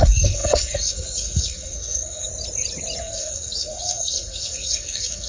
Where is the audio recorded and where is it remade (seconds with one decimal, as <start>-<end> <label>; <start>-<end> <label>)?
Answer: 0.0-2.3 remade; 2.3-3.0 recorded; 3.0-5.3 remade